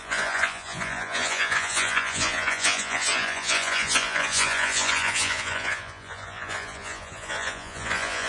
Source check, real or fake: fake